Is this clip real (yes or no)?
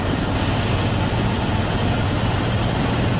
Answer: yes